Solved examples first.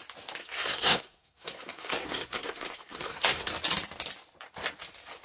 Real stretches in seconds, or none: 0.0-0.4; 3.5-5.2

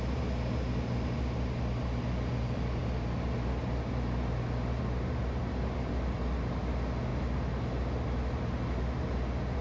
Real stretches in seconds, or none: 0.0-9.6